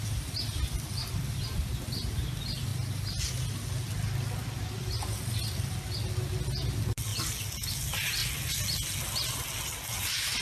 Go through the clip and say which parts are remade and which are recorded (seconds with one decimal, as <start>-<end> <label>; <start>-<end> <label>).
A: 0.0-10.4 recorded